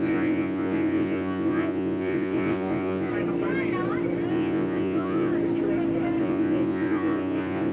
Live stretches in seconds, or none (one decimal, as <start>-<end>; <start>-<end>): 3.1-4.3; 5.3-6.2